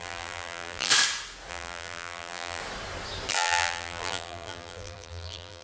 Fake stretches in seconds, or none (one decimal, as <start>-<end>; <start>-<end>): 0.0-0.9; 1.5-2.6; 3.3-5.6